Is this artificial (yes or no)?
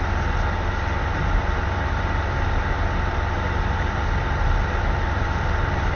no